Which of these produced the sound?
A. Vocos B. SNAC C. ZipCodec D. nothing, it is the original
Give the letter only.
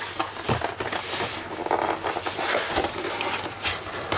D